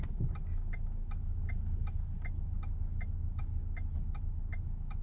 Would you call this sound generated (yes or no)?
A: no